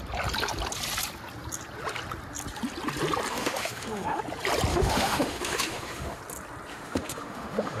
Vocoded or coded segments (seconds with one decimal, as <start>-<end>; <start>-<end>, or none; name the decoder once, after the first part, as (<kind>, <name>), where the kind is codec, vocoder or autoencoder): 3.3-4.2 (autoencoder, DAC-VAE); 4.7-6.2; 6.7-7.8